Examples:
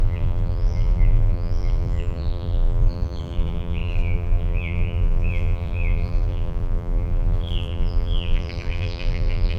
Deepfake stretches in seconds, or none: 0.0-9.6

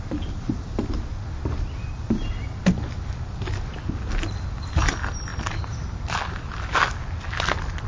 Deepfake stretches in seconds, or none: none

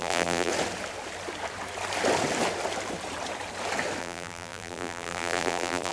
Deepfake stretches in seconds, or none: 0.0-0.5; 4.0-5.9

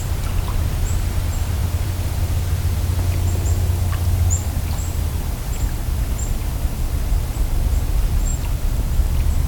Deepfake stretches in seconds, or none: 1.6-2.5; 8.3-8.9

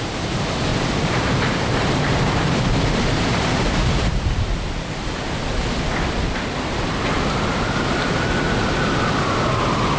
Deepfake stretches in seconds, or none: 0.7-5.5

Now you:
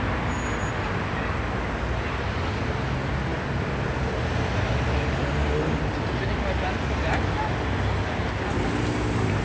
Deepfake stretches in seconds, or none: none

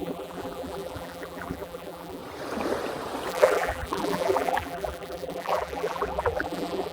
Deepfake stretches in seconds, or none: 0.0-2.2; 3.3-6.9